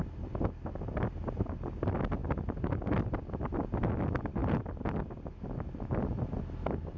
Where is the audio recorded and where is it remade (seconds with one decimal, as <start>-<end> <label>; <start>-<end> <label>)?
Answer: 0.0-7.0 recorded